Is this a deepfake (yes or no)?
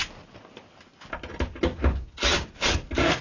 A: no